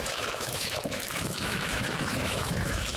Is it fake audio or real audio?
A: fake